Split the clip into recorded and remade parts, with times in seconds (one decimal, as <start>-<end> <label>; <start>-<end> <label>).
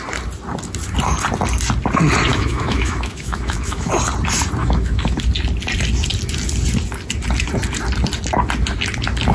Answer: 0.0-2.3 recorded; 2.3-3.9 remade; 3.9-4.6 recorded; 4.6-5.2 remade; 5.2-9.3 recorded